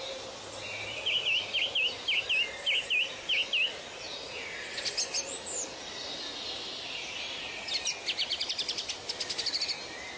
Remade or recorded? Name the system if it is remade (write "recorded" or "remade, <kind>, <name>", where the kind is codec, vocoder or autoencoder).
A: recorded